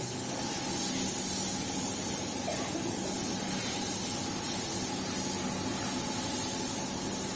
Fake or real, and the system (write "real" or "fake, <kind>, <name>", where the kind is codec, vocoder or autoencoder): real